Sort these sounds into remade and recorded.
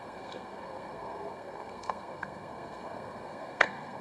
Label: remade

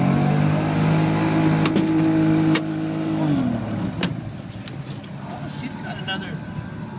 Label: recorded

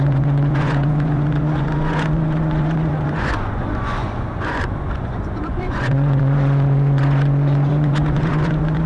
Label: remade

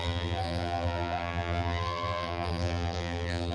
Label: remade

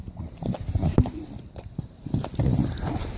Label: recorded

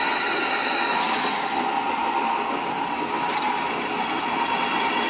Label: recorded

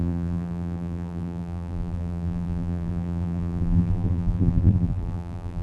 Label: remade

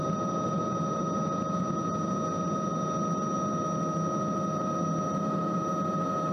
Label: recorded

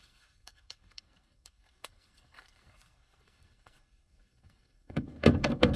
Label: remade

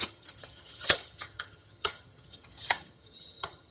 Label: remade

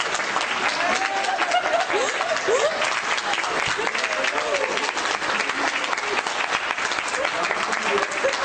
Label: recorded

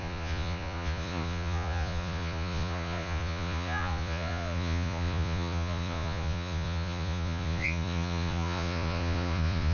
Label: remade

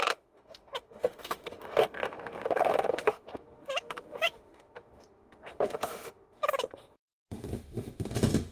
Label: remade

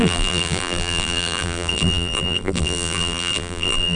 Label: remade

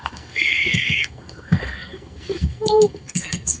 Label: remade